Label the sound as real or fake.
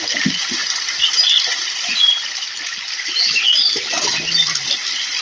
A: real